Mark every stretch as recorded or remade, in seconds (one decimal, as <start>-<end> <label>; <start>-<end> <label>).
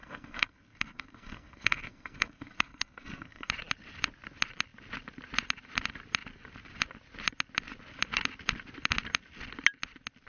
0.0-3.5 remade; 3.5-10.3 recorded